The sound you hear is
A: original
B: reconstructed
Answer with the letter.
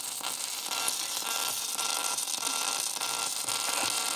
A